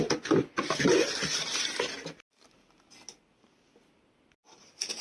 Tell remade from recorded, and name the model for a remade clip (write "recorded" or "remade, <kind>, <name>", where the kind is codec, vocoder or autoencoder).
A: recorded